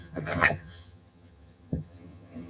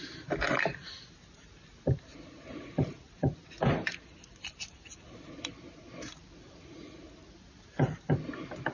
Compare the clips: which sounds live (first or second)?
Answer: second